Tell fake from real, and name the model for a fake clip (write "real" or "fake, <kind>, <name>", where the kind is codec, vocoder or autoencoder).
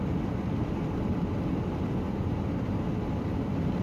real